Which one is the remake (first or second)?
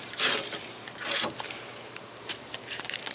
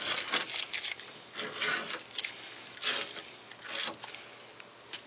first